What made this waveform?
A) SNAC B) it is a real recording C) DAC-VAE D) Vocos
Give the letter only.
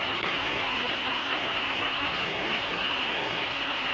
A